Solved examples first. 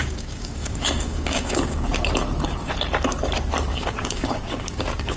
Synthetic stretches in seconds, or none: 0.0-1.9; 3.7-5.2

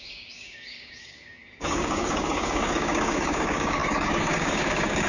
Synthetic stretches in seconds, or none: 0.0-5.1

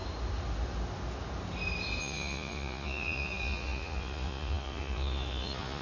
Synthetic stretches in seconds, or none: 2.0-5.8